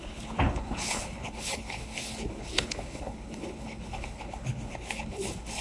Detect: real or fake fake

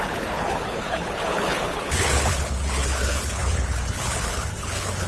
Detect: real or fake fake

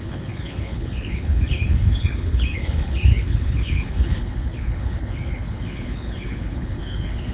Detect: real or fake fake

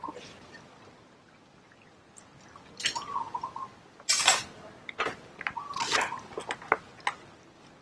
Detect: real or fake real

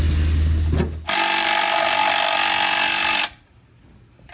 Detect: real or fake real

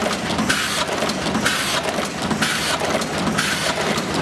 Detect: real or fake real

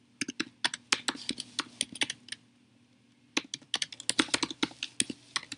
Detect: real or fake real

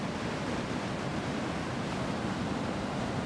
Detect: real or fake real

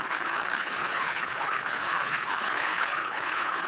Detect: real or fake fake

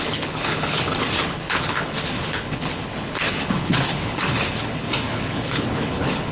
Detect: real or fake fake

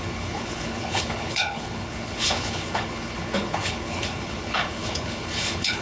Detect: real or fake fake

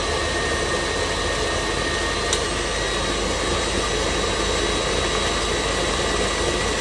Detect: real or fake real